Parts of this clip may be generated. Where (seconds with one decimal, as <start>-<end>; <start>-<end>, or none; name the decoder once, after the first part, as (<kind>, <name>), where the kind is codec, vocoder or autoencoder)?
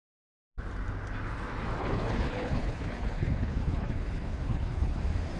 1.8-5.0 (codec, HILCodec)